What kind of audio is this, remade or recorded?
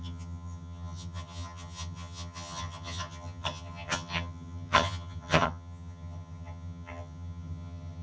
remade